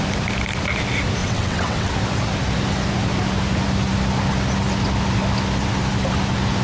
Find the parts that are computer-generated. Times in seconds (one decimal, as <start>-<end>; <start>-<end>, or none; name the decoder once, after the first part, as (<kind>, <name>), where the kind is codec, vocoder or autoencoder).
1.2-1.9 (vocoder, WaveNeXt)